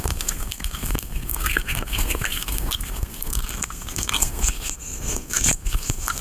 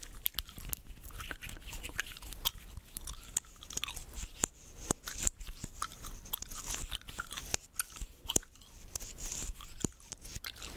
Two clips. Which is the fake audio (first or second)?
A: first